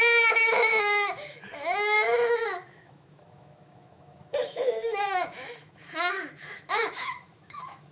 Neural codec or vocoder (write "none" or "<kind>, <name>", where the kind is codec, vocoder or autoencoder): autoencoder, DAC-VAE